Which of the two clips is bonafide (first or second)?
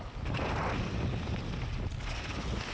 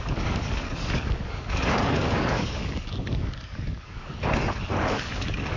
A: first